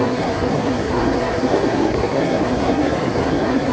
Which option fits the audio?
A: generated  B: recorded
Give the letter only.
A